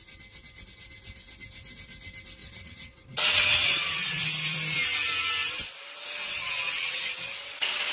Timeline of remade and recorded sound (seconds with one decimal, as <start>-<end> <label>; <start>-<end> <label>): 0.0-2.4 recorded; 2.4-4.2 remade; 4.2-6.2 recorded; 6.2-7.9 remade